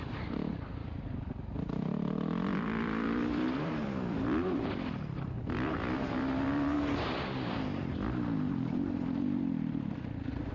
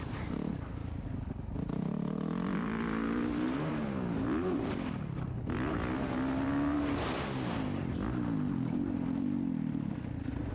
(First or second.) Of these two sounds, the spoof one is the first